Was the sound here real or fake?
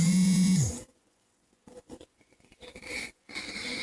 fake